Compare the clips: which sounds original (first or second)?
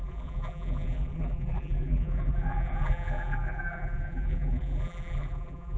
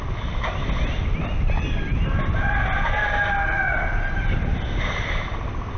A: second